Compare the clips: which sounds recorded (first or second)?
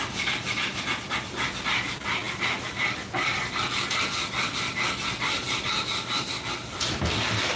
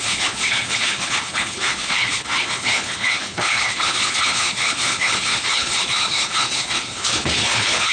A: first